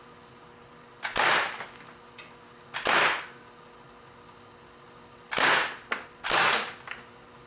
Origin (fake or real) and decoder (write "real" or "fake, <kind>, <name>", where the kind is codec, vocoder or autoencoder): real